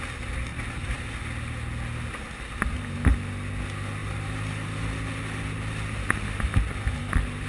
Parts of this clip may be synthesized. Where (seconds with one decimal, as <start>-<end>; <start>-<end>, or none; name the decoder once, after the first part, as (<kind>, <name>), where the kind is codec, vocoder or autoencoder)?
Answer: 0.5-1.2 (vocoder, BigVGAN v2); 4.0-4.8